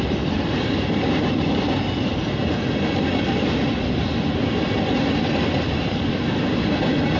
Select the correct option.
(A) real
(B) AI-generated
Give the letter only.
A